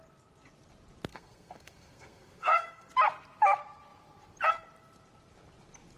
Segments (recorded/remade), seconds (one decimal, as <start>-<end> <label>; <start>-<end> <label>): 0.0-1.1 recorded; 1.1-2.9 remade; 2.9-6.0 recorded

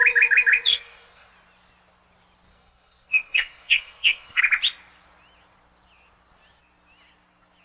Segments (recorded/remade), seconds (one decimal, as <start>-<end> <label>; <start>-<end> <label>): 0.0-0.7 recorded; 0.7-1.3 remade; 1.3-2.5 recorded; 2.5-4.4 remade; 4.4-7.6 recorded

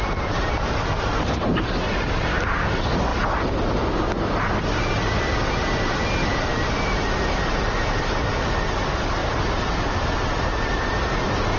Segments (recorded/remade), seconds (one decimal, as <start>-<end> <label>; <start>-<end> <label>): 0.0-11.6 recorded

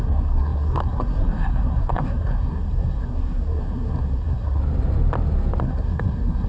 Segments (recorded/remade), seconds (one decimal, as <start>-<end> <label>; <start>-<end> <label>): 0.0-4.6 remade; 4.6-5.6 recorded; 5.6-6.5 remade

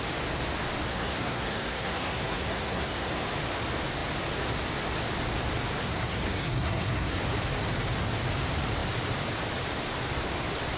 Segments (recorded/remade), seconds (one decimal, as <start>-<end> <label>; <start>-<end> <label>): 0.0-0.9 recorded; 0.9-3.1 remade; 3.1-5.8 recorded; 5.8-7.2 remade; 7.2-10.8 recorded